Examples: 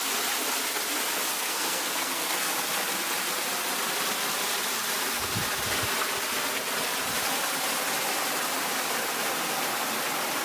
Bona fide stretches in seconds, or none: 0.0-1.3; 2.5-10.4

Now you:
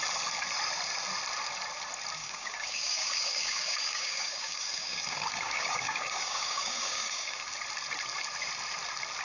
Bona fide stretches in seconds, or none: 0.0-2.2; 7.5-9.2

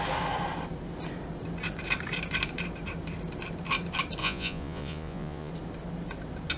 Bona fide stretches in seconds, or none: 0.0-4.2; 5.5-6.6

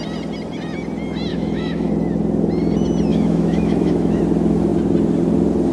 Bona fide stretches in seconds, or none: 0.0-1.3; 1.9-3.1; 4.2-5.7

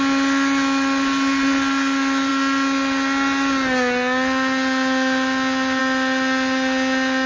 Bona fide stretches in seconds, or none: 0.0-7.3